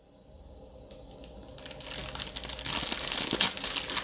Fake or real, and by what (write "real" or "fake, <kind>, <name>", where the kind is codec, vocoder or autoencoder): real